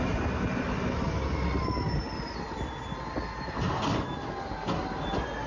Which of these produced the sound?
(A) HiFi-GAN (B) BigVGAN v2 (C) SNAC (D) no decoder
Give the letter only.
D